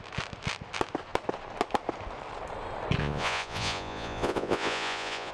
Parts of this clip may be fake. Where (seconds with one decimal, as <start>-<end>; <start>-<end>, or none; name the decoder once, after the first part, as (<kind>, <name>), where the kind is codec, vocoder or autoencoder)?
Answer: 3.0-5.3 (vocoder, Vocos)